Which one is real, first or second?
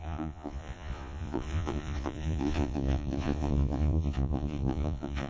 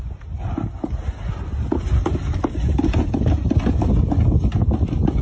second